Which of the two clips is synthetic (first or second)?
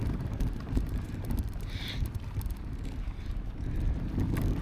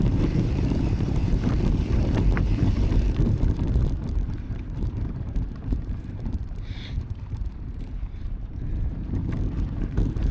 second